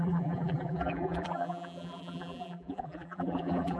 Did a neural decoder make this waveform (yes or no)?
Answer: yes